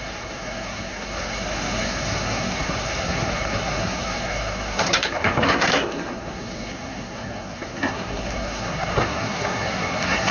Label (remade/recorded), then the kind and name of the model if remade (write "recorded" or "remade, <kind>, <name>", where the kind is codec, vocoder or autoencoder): remade, codec, SNAC